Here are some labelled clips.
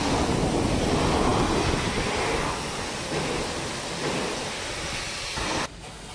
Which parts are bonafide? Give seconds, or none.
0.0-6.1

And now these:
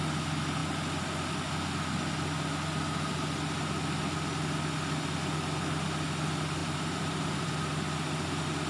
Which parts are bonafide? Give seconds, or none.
0.0-6.6; 7.5-8.7